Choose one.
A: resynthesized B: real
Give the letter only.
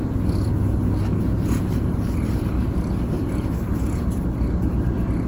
B